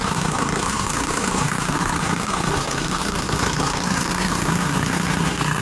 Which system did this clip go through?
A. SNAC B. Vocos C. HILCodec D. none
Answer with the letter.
A